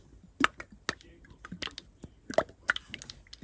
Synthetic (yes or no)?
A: no